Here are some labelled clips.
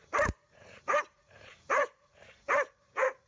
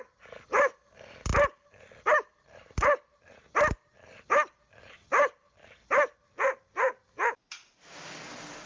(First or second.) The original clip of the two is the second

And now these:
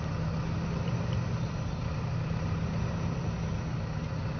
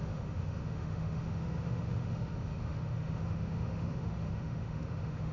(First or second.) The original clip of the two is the first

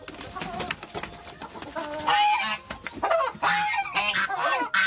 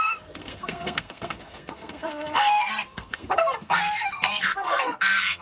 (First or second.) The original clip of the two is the first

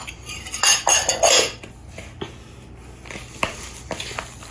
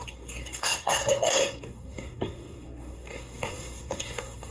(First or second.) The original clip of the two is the first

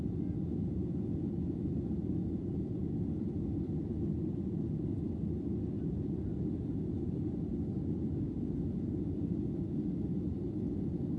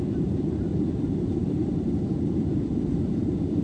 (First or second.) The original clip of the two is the first